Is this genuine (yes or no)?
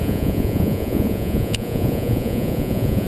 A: no